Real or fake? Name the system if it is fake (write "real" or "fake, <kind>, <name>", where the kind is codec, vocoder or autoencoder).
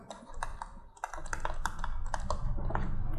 real